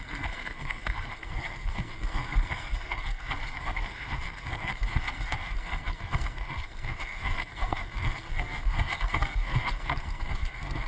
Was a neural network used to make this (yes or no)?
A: yes